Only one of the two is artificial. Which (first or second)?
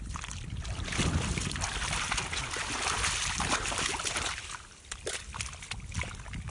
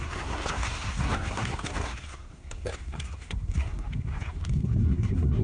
second